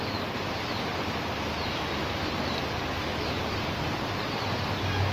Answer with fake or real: real